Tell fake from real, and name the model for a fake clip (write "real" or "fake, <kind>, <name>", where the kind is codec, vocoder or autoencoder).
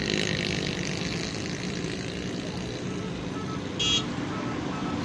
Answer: real